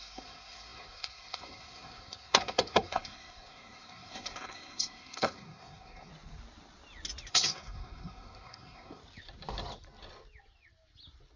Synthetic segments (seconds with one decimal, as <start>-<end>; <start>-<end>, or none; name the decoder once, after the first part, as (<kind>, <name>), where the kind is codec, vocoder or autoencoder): 0.0-6.1 (codec, SNAC); 7.3-9.0